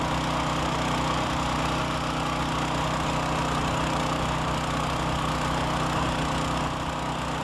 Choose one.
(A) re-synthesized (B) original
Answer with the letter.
B